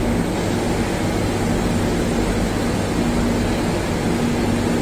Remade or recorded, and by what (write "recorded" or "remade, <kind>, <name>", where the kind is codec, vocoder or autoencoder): recorded